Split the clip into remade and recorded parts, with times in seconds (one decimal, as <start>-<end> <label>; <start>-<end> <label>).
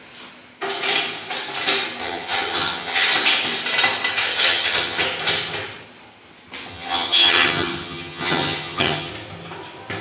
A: 0.0-2.0 recorded; 2.0-3.1 remade; 3.1-4.3 recorded; 4.3-5.0 remade; 5.0-6.7 recorded; 6.7-9.1 remade; 9.1-10.0 recorded